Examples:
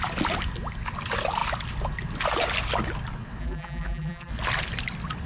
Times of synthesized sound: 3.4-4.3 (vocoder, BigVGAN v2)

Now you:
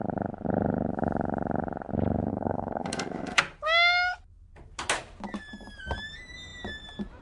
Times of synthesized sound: 2.3-3.4 (codec, SNAC)

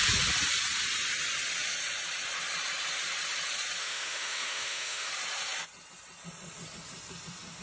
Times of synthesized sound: 3.8-5.1 (autoencoder, DAC-VAE)

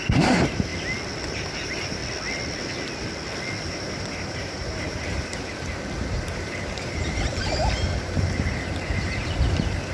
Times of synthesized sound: 0.0-0.7 (vocoder, BigVGAN v2); 1.3-2.0; 3.6-9.9